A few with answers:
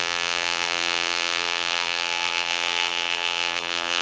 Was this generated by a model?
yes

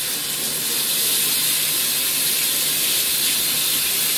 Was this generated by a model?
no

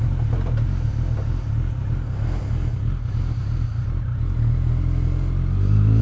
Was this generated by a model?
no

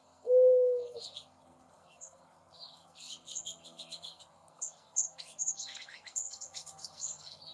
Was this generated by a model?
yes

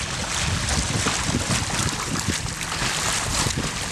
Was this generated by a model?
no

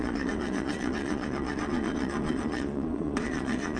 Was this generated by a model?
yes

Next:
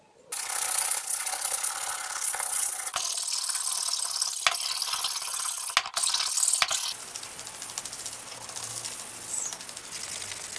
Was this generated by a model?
no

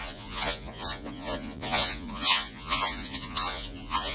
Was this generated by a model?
yes